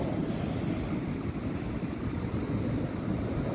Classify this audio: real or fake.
real